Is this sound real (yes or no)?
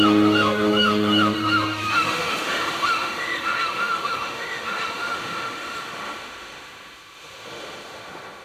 no